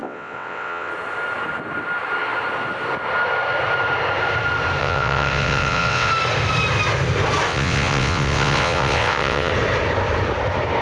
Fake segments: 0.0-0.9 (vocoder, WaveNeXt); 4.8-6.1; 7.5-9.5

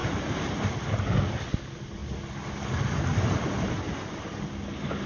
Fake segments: none